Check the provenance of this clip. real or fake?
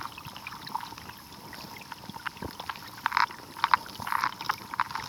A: real